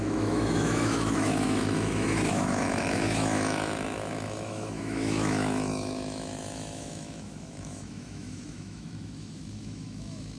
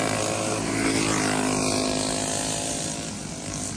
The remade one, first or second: first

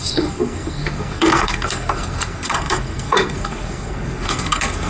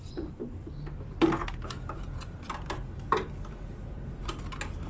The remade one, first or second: first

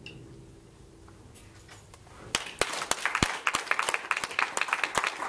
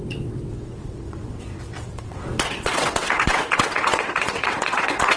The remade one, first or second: second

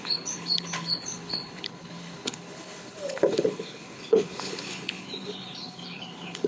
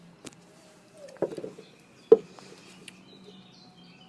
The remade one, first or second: first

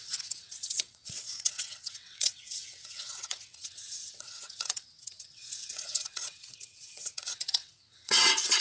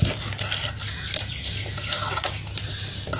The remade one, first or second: first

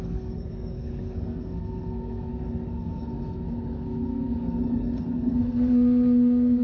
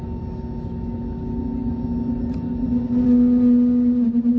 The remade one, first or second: first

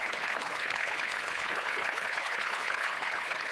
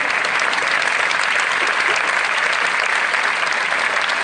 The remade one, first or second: first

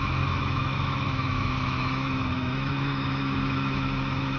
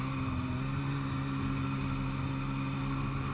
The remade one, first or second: first